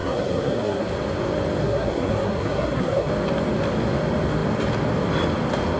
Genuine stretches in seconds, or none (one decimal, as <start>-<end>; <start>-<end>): 0.9-1.6; 3.1-5.8